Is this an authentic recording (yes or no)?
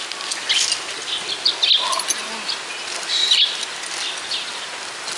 yes